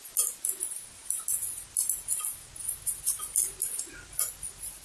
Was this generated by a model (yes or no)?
no